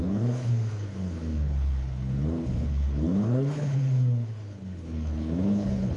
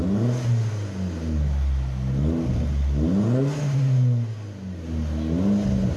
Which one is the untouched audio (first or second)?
second